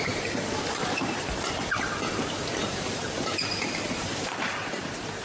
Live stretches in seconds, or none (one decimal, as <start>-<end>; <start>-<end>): none